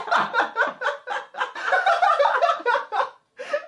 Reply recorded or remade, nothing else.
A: recorded